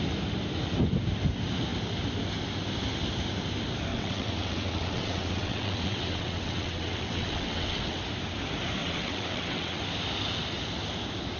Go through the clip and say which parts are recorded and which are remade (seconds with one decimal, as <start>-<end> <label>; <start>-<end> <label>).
0.0-3.9 recorded; 3.9-8.0 remade; 8.0-8.8 recorded; 8.8-9.8 remade; 9.8-11.4 recorded